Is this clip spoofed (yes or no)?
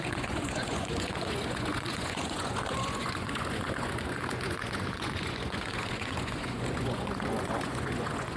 yes